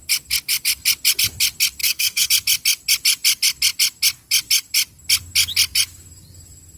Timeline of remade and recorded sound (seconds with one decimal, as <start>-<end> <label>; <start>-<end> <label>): 0.0-1.8 recorded; 1.8-2.3 remade; 2.3-6.8 recorded

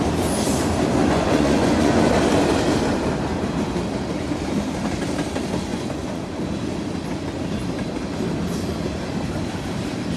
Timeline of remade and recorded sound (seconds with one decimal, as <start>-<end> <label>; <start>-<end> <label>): 0.0-1.0 recorded; 1.0-2.1 remade; 2.1-5.7 recorded; 5.7-6.2 remade; 6.2-10.2 recorded

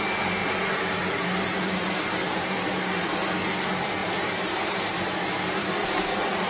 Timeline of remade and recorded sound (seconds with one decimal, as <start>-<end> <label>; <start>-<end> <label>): 0.0-0.4 recorded; 0.4-3.3 remade; 3.3-4.0 recorded; 4.0-6.5 remade

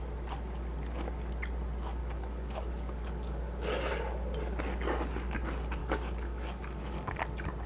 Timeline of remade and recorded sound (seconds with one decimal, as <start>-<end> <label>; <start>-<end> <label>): 0.0-2.0 recorded; 2.0-3.4 remade; 3.4-5.8 recorded; 5.8-7.2 remade; 7.2-7.7 recorded

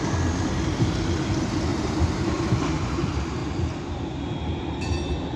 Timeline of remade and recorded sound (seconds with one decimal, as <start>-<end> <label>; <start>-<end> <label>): 0.0-1.7 recorded; 1.7-2.4 remade; 2.4-5.4 recorded

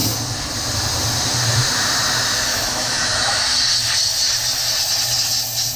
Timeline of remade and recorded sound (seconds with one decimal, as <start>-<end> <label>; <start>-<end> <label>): 0.0-2.5 recorded; 2.5-3.4 remade; 3.4-5.8 recorded

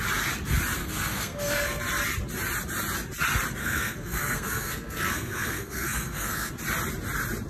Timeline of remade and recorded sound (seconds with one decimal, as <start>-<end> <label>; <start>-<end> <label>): 0.0-0.8 recorded; 0.8-1.8 remade; 1.8-3.6 recorded; 3.6-6.5 remade; 6.5-7.5 recorded